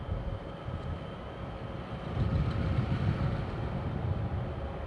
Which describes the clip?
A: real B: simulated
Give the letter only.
B